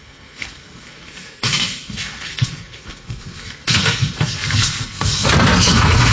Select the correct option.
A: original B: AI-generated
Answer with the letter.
B